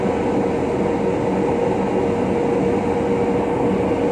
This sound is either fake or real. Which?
real